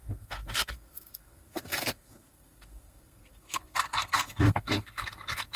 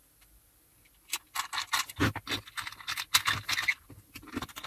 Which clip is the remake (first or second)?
first